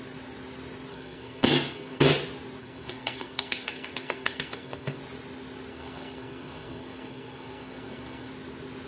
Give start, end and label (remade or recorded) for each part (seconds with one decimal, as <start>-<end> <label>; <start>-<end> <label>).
0.0-0.9 recorded; 0.9-2.1 remade; 2.1-2.6 recorded; 2.6-5.0 remade; 5.0-5.7 recorded; 5.7-8.3 remade; 8.3-8.9 recorded